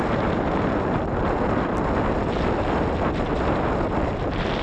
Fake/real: real